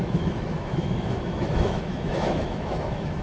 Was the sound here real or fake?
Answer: fake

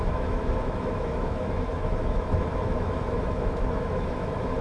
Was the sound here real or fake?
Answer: fake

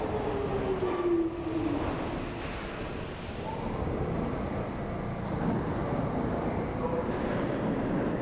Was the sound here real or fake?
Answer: real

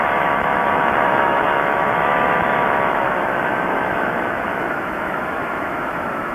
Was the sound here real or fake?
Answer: fake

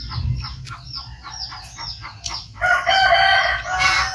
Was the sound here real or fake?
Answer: real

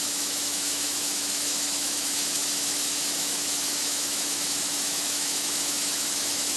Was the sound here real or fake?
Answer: fake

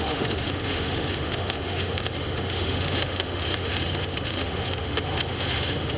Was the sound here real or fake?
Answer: fake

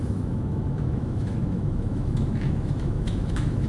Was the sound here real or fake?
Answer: fake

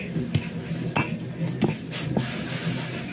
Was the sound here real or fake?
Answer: real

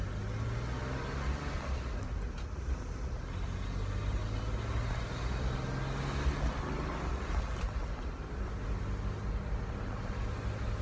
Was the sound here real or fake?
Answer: real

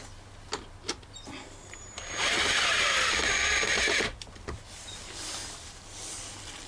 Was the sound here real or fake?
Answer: real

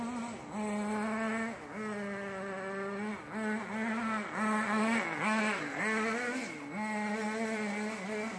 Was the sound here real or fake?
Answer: real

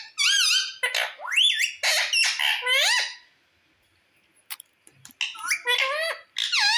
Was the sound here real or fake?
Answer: real